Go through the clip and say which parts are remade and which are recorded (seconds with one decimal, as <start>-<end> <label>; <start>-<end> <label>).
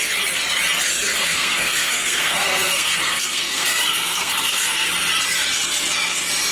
0.0-1.1 recorded; 1.1-4.9 remade; 4.9-6.5 recorded